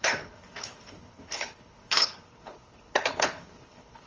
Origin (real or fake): fake